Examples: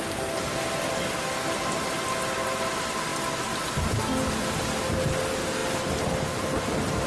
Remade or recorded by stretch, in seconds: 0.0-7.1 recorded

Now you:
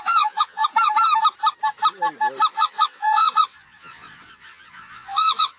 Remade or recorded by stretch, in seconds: 0.0-0.6 remade; 0.6-2.5 recorded; 2.5-5.6 remade

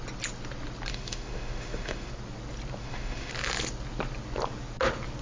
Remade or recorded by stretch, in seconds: 0.0-0.9 recorded; 0.9-2.1 remade; 2.1-2.8 recorded; 2.8-3.3 remade; 3.3-5.2 recorded

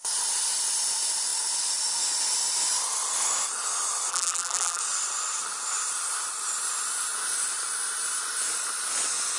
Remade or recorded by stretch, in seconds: 0.0-4.1 recorded; 4.1-4.8 remade; 4.8-9.4 recorded

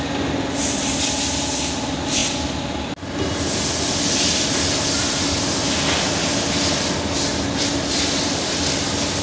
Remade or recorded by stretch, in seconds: 0.0-9.2 recorded

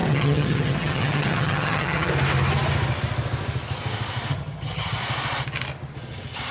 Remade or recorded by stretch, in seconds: 0.0-2.1 remade; 2.1-4.3 recorded; 4.3-5.0 remade; 5.0-6.5 recorded